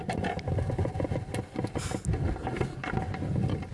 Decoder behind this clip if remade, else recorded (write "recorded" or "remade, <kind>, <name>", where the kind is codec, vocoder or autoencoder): recorded